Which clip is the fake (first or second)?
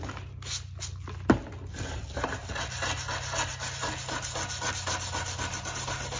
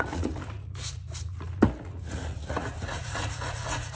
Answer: second